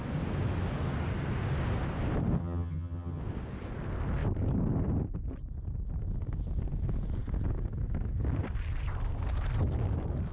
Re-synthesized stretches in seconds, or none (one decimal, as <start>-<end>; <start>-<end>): 2.4-3.2